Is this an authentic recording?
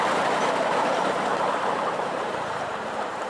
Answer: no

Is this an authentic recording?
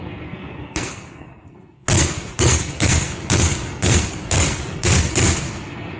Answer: no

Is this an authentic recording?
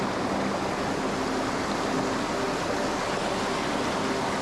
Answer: yes